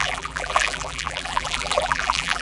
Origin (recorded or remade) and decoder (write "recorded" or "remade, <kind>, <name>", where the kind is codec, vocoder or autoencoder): remade, vocoder, BigVGAN v2